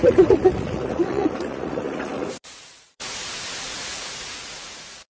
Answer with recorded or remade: remade